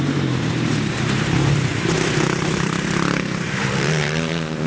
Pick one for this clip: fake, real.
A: fake